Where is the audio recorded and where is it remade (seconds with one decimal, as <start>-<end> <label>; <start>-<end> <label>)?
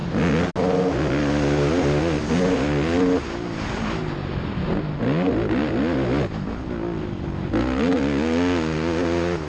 0.0-9.5 recorded